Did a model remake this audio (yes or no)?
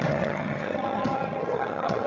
yes